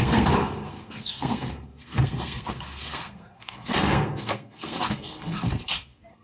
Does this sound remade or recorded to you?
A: remade